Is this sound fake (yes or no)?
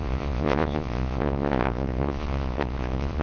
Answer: yes